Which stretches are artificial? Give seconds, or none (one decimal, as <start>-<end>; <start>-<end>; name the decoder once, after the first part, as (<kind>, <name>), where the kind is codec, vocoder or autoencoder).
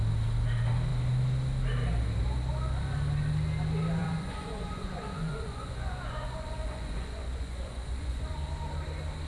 4.0-8.3 (vocoder, Vocos)